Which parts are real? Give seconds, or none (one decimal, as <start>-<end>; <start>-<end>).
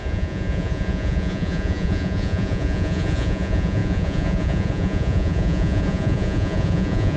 none